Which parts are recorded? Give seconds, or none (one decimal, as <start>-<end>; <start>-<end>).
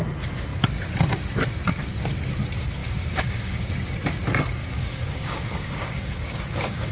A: 0.0-2.8; 3.7-4.6